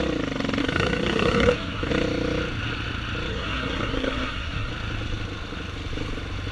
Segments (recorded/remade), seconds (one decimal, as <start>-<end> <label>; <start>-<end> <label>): 0.0-0.6 recorded; 0.6-1.9 remade; 1.9-3.3 recorded; 3.3-4.7 remade; 4.7-6.5 recorded